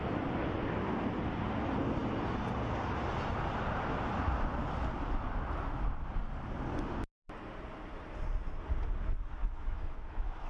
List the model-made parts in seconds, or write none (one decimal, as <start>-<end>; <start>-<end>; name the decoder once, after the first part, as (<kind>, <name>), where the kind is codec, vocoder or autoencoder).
9.4-10.5 (autoencoder, DAC-VAE)